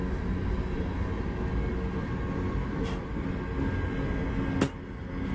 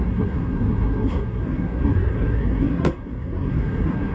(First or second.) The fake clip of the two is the second